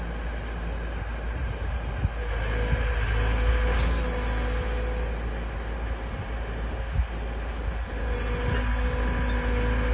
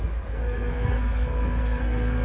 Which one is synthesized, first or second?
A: second